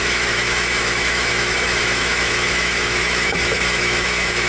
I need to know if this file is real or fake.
fake